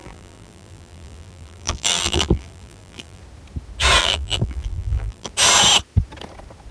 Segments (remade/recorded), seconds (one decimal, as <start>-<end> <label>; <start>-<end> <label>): 0.0-3.2 remade; 3.2-4.0 recorded; 4.0-5.3 remade; 5.3-6.7 recorded